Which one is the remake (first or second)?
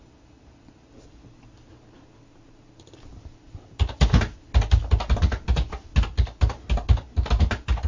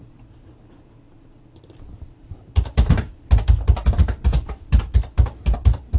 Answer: second